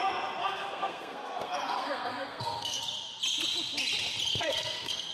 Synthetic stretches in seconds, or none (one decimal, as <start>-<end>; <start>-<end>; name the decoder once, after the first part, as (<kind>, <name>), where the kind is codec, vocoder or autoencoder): 0.4-2.8 (codec, SNAC); 4.3-5.1